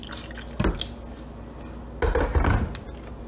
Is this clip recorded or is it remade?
recorded